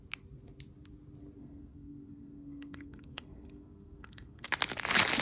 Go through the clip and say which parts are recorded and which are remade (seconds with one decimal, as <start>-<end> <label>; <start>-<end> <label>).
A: 0.0-1.4 recorded; 1.4-4.5 remade; 4.5-5.2 recorded